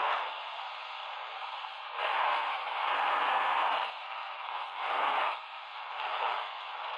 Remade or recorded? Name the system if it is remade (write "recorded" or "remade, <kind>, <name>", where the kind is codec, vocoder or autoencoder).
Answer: remade, codec, SNAC